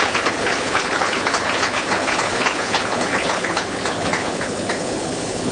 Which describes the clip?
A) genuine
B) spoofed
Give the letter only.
B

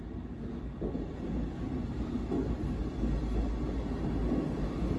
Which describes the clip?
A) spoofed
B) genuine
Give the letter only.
B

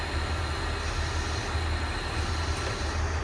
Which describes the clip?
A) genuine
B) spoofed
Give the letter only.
A